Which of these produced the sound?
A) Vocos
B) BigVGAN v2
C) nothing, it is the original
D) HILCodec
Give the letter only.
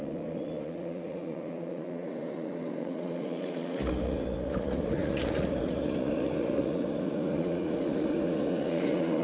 A